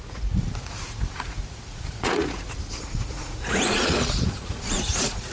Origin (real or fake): fake